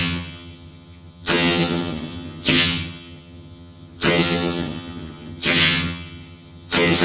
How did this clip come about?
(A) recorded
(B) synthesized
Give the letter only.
B